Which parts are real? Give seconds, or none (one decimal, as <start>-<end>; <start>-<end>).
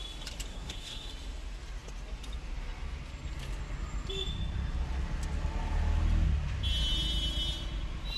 0.0-0.5; 1.1-8.2